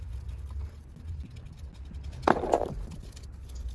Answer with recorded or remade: recorded